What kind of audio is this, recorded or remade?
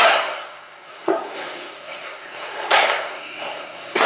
remade